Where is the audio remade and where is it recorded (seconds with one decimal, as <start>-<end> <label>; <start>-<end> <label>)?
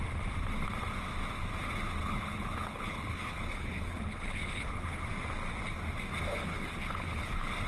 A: 0.0-2.0 recorded; 2.0-5.1 remade; 5.1-6.3 recorded; 6.3-7.7 remade